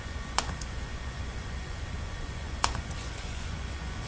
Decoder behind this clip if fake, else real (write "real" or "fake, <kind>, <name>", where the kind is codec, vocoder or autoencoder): fake, vocoder, Vocos